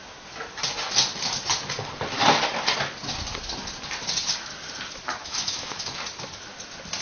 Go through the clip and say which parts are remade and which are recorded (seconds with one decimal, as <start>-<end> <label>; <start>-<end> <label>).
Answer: 0.0-5.2 recorded; 5.2-5.9 remade; 5.9-7.0 recorded